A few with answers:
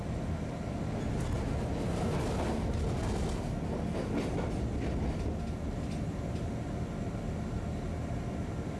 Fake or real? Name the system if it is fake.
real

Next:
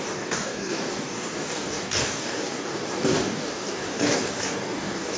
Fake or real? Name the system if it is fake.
fake, codec, DAC